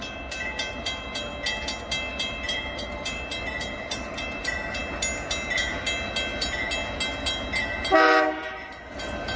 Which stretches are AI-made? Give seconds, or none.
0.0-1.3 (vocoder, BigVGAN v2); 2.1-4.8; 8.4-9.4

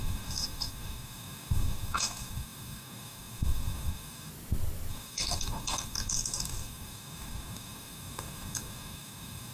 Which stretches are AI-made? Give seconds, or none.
0.0-4.3 (codec, DAC); 4.9-9.5